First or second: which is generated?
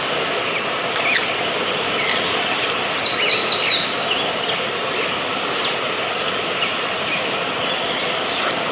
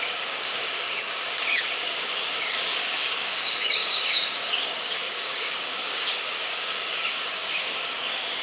second